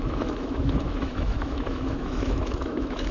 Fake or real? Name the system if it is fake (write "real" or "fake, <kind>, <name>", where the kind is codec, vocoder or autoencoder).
fake, autoencoder, DAC-VAE